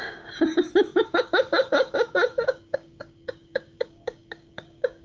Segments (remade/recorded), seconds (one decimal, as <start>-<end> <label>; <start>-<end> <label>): 0.0-5.0 remade